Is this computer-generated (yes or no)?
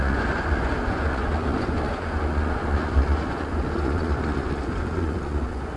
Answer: yes